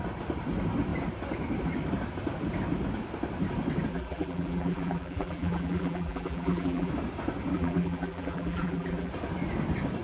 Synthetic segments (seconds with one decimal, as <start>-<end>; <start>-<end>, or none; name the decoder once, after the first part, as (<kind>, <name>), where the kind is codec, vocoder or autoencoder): 3.9-6.9 (vocoder, BigVGAN v2); 7.5-9.1